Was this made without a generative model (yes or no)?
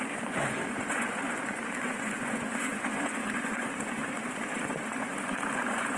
no